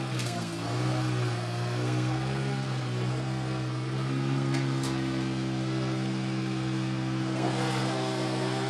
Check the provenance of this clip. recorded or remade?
remade